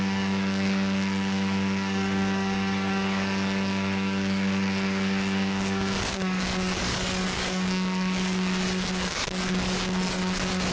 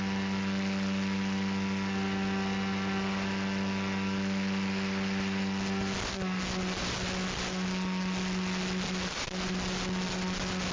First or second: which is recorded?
second